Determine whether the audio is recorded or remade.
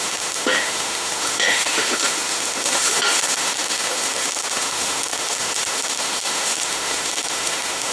remade